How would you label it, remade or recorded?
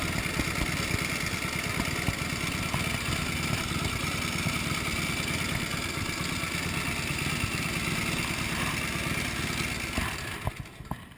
recorded